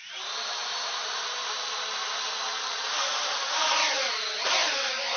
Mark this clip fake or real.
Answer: fake